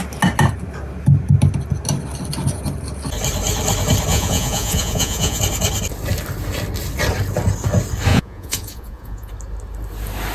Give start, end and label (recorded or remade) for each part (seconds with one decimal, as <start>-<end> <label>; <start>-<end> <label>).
0.0-4.1 recorded; 4.1-5.4 remade; 5.4-8.1 recorded; 8.1-9.3 remade; 9.3-10.3 recorded